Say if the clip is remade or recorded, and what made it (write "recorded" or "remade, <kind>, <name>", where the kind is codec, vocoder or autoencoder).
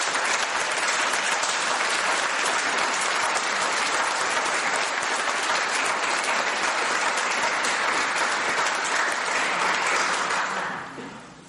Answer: recorded